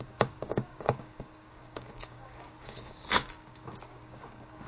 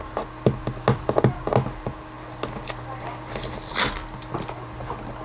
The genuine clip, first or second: second